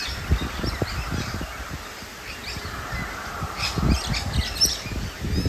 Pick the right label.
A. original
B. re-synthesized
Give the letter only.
A